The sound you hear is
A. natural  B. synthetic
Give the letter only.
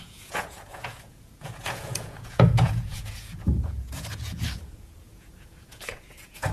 B